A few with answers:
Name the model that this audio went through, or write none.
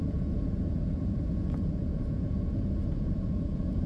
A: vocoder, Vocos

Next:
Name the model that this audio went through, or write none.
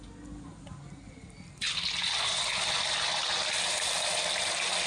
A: none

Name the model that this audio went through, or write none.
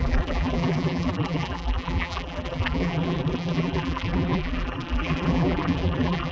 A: vocoder, BigVGAN v2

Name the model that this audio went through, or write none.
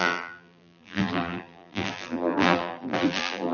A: vocoder, BigVGAN v2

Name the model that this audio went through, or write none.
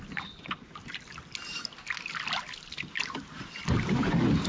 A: none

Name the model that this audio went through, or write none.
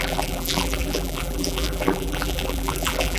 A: vocoder, BigVGAN v2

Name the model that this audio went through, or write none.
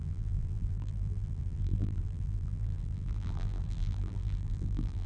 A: vocoder, BigVGAN v2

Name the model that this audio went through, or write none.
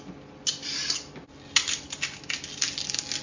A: none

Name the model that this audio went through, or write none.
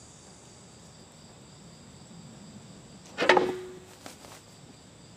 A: none